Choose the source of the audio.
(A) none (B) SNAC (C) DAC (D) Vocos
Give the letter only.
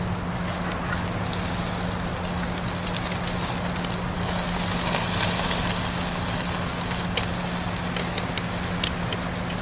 A